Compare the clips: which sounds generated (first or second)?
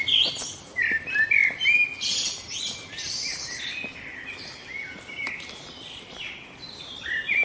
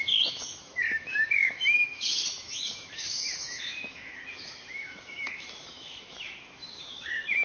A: second